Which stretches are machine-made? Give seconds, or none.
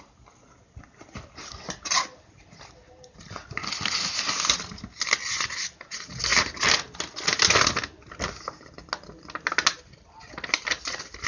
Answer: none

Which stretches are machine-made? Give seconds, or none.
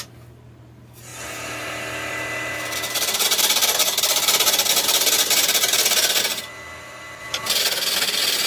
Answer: none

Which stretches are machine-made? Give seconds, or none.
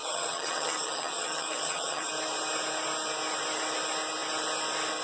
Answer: 0.0-2.1 (vocoder, HiFi-GAN)